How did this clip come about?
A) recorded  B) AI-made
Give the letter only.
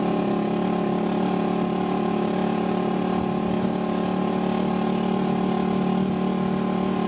A